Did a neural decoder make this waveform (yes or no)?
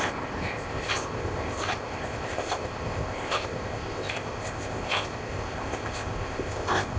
yes